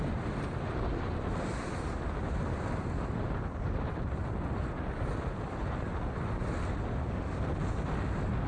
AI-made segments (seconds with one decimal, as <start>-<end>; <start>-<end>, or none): none